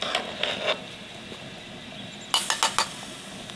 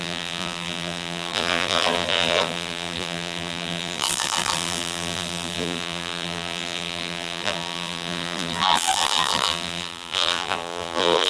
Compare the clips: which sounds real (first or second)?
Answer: first